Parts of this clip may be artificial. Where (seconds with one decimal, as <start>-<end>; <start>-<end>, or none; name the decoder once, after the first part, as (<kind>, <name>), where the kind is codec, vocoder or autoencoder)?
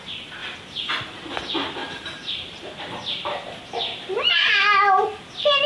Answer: 1.8-2.6 (vocoder, BigVGAN v2)